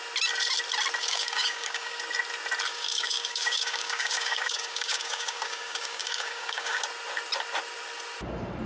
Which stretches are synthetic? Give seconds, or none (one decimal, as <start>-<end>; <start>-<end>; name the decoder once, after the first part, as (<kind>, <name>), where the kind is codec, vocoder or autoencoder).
1.0-2.0 (codec, DAC); 2.7-6.8